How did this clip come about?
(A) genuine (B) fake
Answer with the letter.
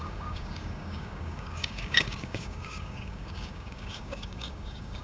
B